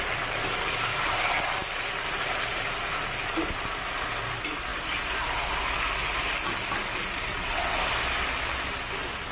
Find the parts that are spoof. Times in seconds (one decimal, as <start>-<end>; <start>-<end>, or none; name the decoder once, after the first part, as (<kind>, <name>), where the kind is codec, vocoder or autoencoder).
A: 7.3-7.8 (vocoder, WaveNeXt)